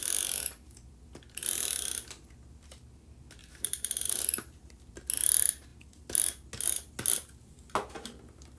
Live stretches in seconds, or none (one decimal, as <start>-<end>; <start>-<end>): 0.0-3.4; 4.9-8.6

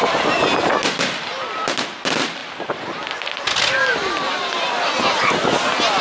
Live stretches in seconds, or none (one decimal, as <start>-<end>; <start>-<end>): 0.0-6.0

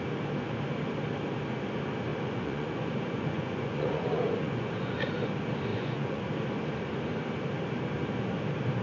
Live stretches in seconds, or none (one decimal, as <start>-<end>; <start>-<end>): 0.0-2.1; 4.9-5.7; 6.2-8.8

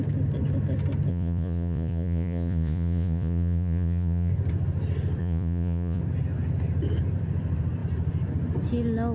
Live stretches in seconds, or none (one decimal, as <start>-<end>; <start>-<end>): 0.0-1.1; 4.3-5.2; 6.0-9.1

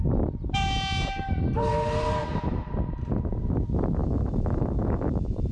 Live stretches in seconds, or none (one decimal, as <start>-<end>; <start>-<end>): 0.0-4.0

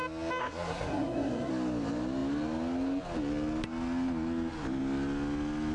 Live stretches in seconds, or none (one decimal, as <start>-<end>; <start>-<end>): 0.0-0.4; 1.5-5.7

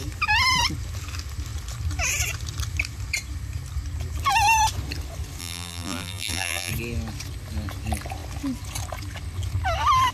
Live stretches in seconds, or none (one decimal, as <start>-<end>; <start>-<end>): 0.0-5.4; 6.7-10.1